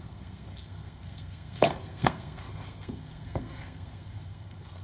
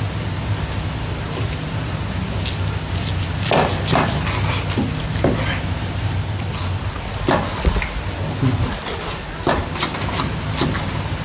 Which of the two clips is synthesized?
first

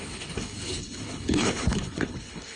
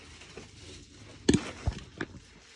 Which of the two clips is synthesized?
first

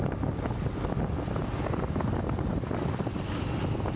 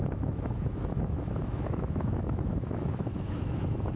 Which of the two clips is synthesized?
second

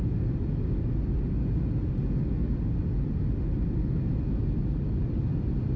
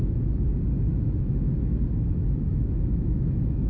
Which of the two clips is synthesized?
second